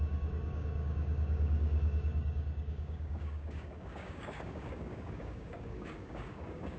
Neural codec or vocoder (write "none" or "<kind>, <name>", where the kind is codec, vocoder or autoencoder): codec, DAC